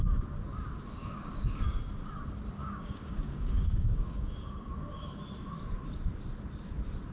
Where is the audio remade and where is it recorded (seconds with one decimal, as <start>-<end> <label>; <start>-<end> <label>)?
0.0-1.0 recorded; 1.0-1.8 remade; 1.8-2.6 recorded; 2.6-4.7 remade; 4.7-7.1 recorded